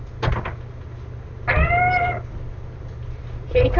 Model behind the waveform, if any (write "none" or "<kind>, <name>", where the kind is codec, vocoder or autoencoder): none